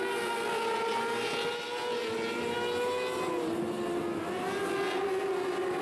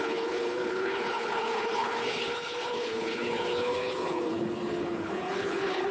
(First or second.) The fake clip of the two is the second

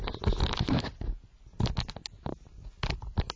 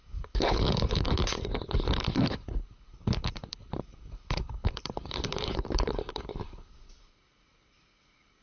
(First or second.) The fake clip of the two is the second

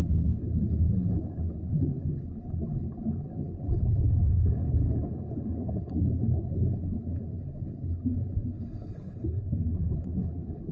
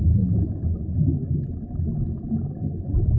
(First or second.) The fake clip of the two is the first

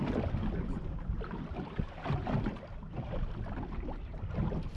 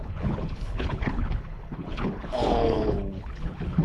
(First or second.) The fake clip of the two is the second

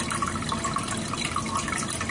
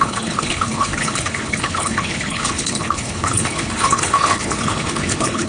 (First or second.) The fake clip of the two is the second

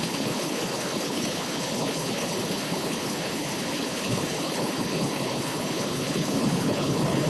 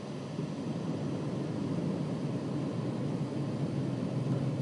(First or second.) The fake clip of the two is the first